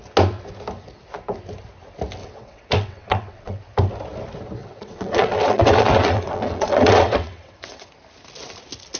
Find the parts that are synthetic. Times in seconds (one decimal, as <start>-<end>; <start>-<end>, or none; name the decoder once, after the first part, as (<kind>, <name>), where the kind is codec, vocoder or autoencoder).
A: 2.2-3.6 (vocoder, WaveNeXt); 4.6-7.9